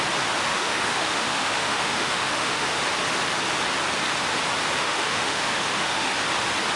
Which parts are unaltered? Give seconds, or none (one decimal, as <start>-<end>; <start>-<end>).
0.0-0.5; 2.8-4.8; 6.1-6.8